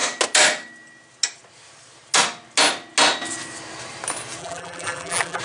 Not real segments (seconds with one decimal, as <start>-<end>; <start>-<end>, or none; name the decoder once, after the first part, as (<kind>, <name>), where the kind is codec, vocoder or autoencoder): 4.4-5.4 (vocoder, BigVGAN v2)

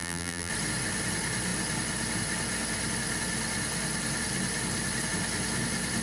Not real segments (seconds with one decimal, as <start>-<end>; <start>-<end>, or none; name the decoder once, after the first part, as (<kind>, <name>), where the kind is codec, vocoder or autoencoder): 0.0-0.5 (vocoder, BigVGAN v2)